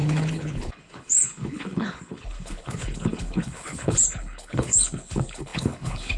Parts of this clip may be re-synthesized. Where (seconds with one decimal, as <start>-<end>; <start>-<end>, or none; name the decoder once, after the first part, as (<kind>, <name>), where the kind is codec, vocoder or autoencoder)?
0.0-6.2 (codec, HILCodec)